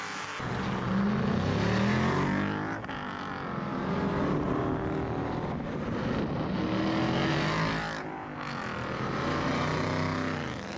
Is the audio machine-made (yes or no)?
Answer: no